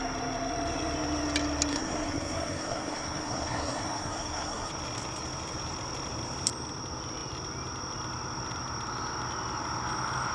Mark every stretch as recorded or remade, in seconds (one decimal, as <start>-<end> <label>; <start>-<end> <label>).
0.0-1.7 recorded; 1.7-4.7 remade; 4.7-10.3 recorded